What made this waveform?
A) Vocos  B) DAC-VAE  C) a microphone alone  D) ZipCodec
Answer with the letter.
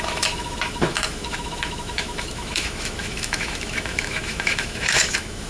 B